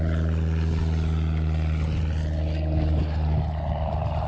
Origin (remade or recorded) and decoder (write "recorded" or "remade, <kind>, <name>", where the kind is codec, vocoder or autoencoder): recorded